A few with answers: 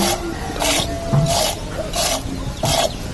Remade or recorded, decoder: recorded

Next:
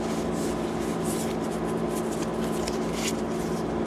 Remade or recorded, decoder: recorded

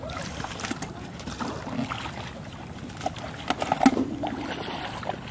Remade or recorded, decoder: recorded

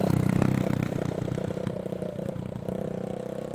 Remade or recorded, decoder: recorded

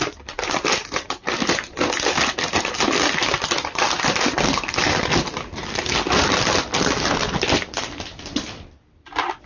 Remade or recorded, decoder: remade, vocoder, BigVGAN v2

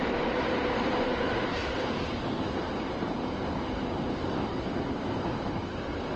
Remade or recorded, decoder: remade, vocoder, BigVGAN v2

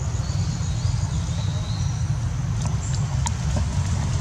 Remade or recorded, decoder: recorded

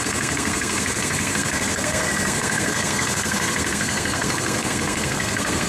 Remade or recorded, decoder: remade, codec, SNAC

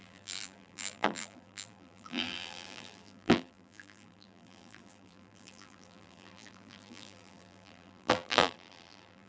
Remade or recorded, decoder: remade, vocoder, BigVGAN v2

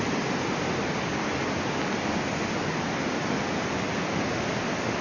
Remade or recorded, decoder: recorded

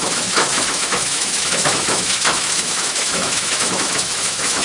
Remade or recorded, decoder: remade, autoencoder, DAC-VAE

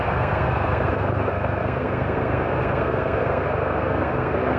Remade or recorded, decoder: remade, codec, SNAC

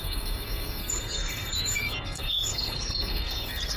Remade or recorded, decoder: remade, codec, SNAC